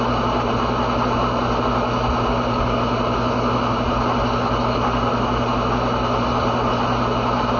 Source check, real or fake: real